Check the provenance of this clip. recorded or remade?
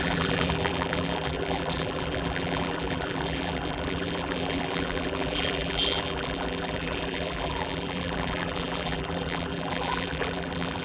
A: remade